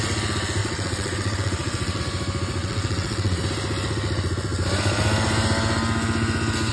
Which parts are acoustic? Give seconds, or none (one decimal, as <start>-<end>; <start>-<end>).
0.0-0.6; 2.0-2.6; 3.4-6.7